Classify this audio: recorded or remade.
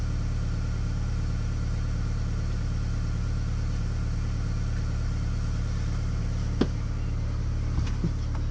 recorded